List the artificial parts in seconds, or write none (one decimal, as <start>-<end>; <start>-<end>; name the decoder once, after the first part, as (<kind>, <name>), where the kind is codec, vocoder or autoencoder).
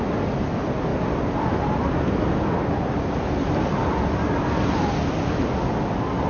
none